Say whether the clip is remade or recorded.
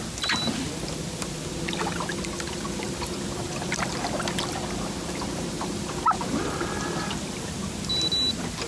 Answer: recorded